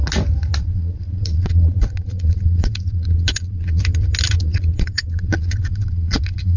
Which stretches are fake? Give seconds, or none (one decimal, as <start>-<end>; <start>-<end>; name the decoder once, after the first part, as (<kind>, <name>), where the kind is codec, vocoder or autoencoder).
0.6-3.8 (vocoder, Vocos); 4.4-6.6